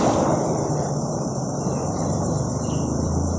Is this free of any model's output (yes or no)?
no